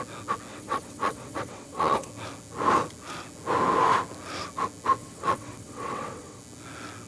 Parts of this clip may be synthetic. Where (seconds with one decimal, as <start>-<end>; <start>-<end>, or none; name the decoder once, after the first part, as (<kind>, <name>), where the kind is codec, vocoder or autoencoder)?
0.5-2.1 (vocoder, WaveNeXt); 5.0-6.4